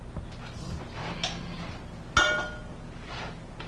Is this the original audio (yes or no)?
yes